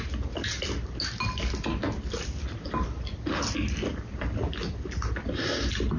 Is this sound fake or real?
real